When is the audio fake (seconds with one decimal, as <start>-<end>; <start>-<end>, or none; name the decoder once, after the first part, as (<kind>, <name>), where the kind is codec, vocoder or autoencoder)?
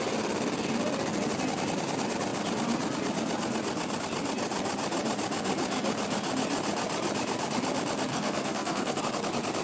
8.1-9.0 (codec, SNAC)